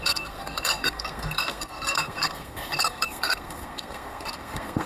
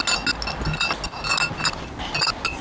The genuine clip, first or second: second